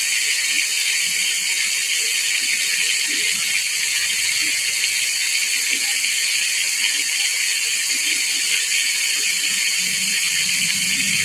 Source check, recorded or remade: recorded